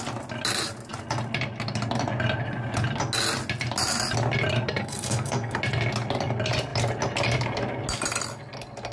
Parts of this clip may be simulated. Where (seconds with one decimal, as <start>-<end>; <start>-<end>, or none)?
4.8-5.6